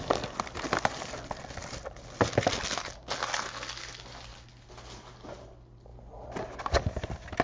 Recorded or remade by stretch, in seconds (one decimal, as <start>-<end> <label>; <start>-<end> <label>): 0.0-7.4 recorded